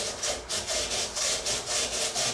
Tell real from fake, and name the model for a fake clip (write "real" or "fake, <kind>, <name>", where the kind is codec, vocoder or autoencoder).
real